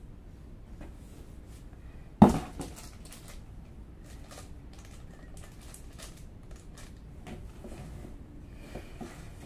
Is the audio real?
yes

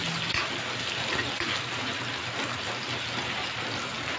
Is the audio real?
yes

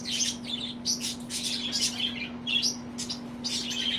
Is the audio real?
yes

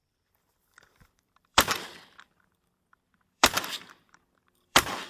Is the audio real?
no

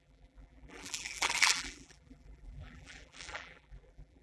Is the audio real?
no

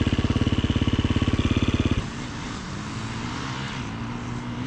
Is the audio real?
yes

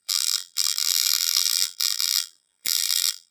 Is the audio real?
no